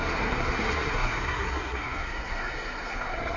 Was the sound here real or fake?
fake